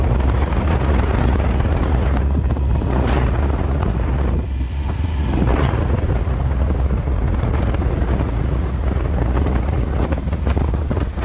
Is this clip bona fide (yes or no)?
no